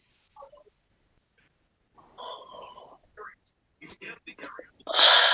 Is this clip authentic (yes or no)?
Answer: yes